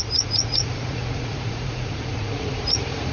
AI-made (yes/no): yes